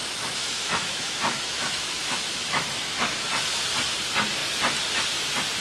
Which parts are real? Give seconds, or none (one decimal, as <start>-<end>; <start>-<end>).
3.3-5.6